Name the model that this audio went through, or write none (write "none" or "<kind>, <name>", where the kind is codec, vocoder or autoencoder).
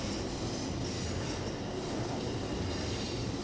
none